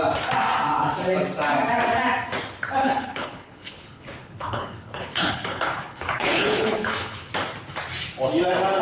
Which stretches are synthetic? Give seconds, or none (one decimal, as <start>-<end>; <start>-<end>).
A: 2.8-7.3